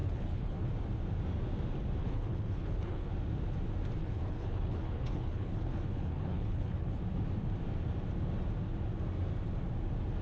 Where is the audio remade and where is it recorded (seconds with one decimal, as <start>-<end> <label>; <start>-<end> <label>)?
0.0-0.7 remade; 0.7-2.0 recorded; 2.0-3.1 remade; 3.1-4.0 recorded; 4.0-7.0 remade; 7.0-10.2 recorded